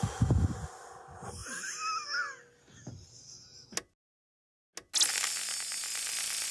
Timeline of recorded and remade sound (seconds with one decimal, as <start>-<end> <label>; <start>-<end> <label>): 0.0-6.5 recorded